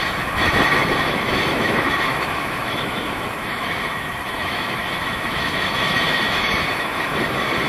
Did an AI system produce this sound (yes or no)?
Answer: yes